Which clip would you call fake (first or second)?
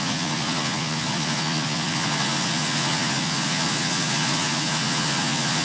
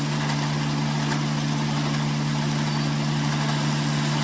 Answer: first